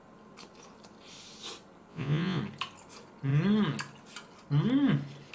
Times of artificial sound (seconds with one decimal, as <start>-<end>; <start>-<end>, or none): 1.9-2.4